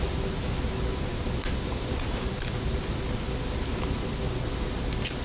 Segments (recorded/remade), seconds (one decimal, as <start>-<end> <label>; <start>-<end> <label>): 0.0-1.1 recorded; 1.1-2.4 remade; 2.4-5.2 recorded